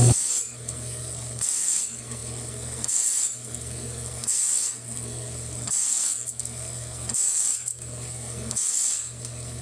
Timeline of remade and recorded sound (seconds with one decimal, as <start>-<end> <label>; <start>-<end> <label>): 0.0-9.6 remade